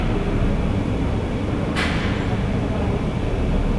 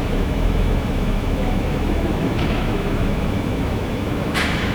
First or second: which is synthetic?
second